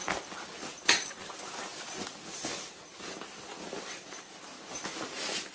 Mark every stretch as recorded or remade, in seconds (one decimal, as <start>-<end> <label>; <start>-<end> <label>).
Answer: 0.0-5.5 recorded